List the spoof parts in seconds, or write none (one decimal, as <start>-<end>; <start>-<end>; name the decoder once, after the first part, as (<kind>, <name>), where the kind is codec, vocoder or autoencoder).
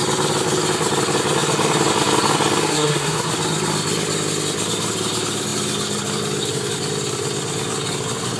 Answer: 2.7-3.3 (codec, SNAC)